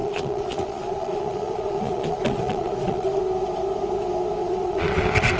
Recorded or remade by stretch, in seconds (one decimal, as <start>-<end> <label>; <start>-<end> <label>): 0.0-3.2 remade; 3.2-4.4 recorded; 4.4-5.0 remade; 5.0-5.4 recorded